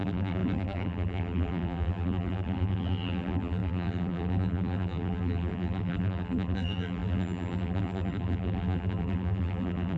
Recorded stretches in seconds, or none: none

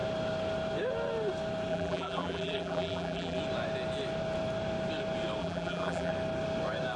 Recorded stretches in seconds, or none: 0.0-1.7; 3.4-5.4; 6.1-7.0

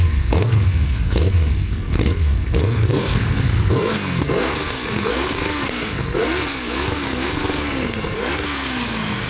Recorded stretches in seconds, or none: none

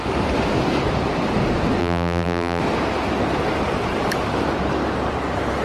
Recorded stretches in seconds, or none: 0.0-1.8; 2.6-5.6

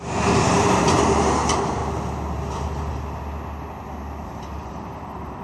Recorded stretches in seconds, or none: 1.8-4.6

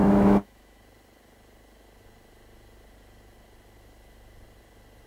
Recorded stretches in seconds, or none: 0.8-5.1

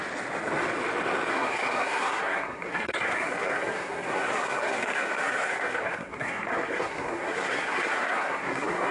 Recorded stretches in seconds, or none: 0.0-1.3

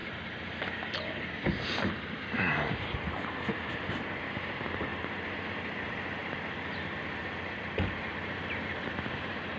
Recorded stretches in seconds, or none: 0.0-1.1; 4.9-7.6